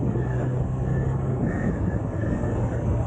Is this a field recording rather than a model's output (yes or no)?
no